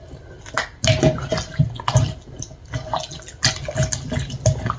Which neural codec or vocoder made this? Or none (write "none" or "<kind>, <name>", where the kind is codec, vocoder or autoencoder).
none